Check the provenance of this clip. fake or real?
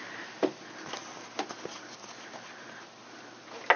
real